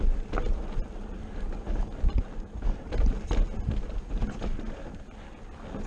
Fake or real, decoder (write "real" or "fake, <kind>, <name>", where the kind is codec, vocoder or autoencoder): real